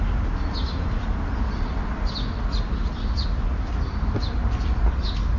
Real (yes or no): yes